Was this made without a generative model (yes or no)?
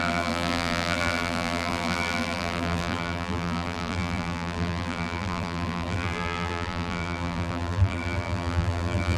no